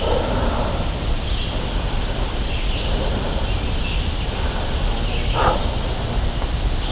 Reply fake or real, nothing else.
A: real